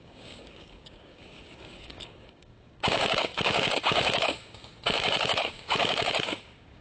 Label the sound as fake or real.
fake